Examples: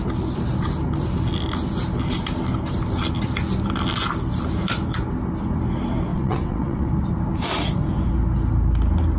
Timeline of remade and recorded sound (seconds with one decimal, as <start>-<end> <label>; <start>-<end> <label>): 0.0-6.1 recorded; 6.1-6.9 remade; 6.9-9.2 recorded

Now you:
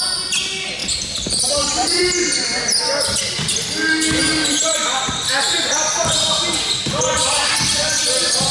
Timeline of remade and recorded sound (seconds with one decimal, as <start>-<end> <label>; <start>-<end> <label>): 0.0-0.8 recorded; 0.8-2.2 remade; 2.2-4.2 recorded; 4.2-5.2 remade; 5.2-8.5 recorded

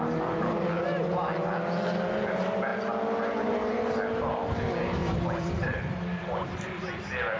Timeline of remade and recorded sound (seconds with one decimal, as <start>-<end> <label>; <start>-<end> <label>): 0.0-5.0 recorded; 5.0-6.2 remade; 6.2-7.4 recorded

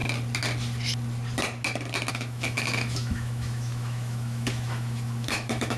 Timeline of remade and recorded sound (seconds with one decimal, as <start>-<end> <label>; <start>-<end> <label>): 0.0-2.1 recorded; 2.1-5.8 remade

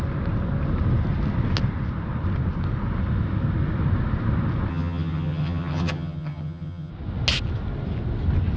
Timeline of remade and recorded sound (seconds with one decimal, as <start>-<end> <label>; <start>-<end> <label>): 0.0-4.7 recorded; 4.7-6.9 remade; 6.9-8.6 recorded